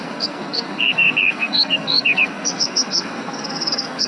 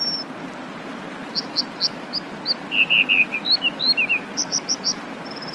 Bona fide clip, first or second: second